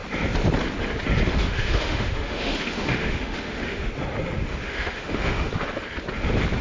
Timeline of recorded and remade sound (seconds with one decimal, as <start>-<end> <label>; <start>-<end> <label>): 0.0-1.3 recorded; 1.3-3.9 remade; 3.9-4.5 recorded; 4.5-5.5 remade; 5.5-6.6 recorded